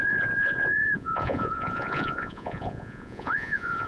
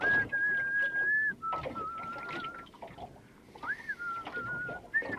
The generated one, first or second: first